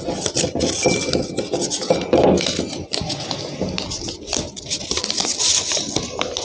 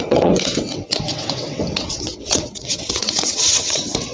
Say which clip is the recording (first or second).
first